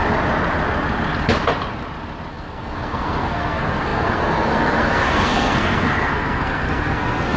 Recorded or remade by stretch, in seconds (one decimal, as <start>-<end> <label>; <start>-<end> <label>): 0.0-2.3 recorded; 2.3-7.4 remade